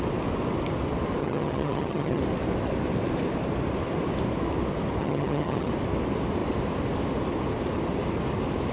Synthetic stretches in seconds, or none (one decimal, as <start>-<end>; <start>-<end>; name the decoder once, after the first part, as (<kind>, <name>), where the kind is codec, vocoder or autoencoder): 1.2-2.2 (vocoder, HiFi-GAN); 5.0-5.7